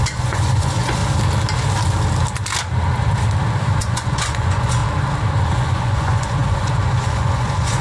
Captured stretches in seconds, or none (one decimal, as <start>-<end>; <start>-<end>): 1.0-3.8; 4.8-5.5